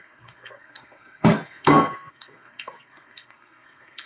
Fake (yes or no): yes